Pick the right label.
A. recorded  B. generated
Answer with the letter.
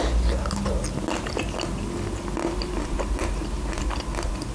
A